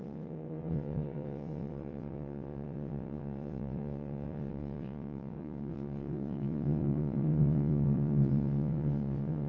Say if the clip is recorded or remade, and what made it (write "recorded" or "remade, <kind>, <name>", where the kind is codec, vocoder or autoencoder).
remade, vocoder, WaveNeXt